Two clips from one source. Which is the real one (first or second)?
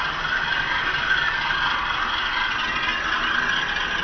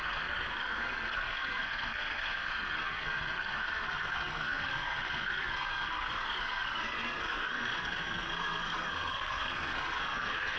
first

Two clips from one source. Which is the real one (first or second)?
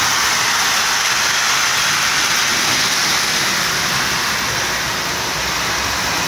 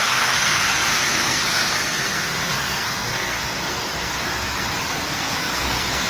first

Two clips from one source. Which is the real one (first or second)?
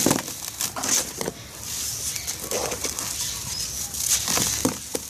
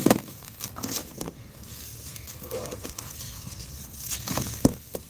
first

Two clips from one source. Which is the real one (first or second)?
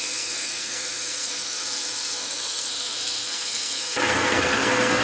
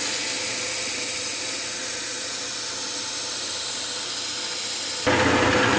second